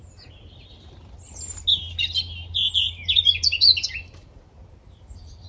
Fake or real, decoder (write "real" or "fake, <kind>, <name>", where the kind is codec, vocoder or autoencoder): real